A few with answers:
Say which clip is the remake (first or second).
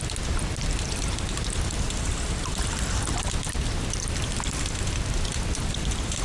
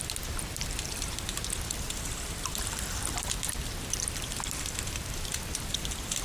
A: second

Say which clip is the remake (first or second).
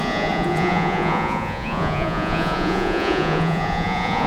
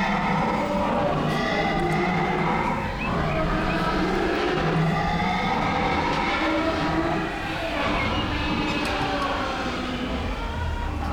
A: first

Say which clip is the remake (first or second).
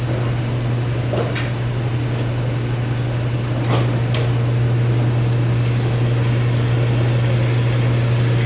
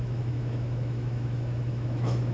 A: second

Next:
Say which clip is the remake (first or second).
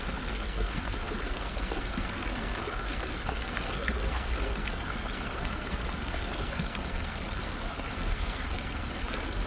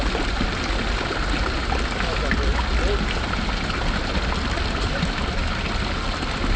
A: first